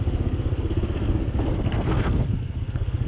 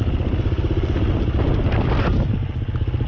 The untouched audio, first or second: second